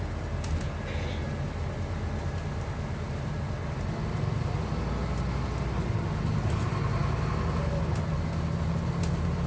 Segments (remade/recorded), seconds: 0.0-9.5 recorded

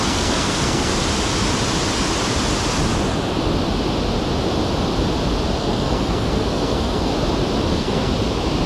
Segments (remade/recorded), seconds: 0.0-0.9 remade; 0.9-5.6 recorded; 5.6-7.1 remade; 7.1-7.7 recorded; 7.7-8.1 remade; 8.1-8.7 recorded

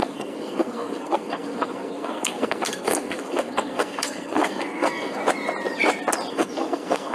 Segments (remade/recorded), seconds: 0.0-5.2 remade; 5.2-6.3 recorded; 6.3-7.1 remade

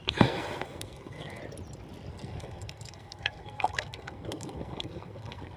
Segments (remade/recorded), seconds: 0.0-1.4 remade; 1.4-2.1 recorded; 2.1-5.6 remade

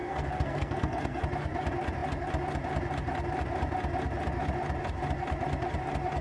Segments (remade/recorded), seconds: 0.0-1.2 remade; 1.2-6.2 recorded

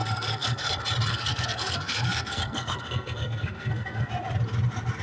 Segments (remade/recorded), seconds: 0.0-0.7 remade; 0.7-1.1 recorded; 1.1-4.1 remade; 4.1-5.0 recorded

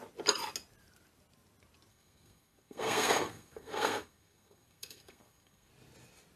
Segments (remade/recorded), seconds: 0.0-1.9 recorded; 1.9-5.7 remade; 5.7-6.4 recorded

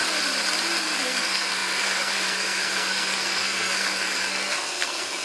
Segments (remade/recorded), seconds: 0.0-0.8 recorded; 0.8-5.2 remade